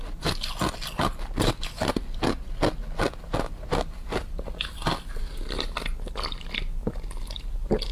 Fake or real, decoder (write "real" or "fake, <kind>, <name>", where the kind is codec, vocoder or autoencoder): real